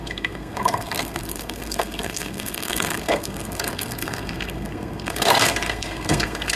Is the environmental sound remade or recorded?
remade